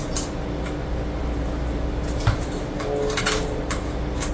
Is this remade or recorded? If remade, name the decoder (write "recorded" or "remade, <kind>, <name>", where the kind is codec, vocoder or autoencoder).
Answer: recorded